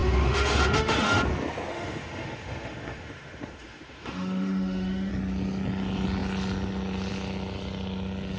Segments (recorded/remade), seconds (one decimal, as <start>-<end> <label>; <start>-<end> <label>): 0.0-1.2 remade; 1.2-1.7 recorded; 1.7-5.1 remade; 5.1-8.4 recorded